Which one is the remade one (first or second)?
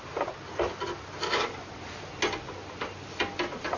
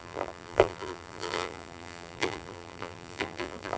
second